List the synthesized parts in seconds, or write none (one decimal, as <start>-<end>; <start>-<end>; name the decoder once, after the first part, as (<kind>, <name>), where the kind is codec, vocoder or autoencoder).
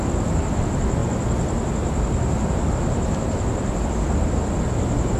none